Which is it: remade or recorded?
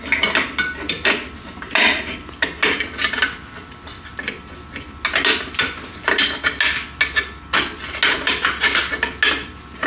recorded